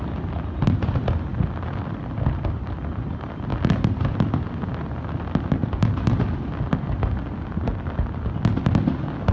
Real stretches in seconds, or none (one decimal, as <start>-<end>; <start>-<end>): 0.0-9.3